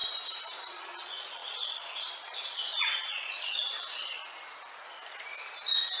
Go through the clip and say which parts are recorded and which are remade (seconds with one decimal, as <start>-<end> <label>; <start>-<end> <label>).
0.0-0.6 recorded; 0.6-4.2 remade; 4.2-6.0 recorded